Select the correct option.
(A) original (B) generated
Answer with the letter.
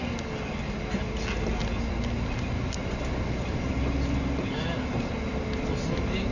A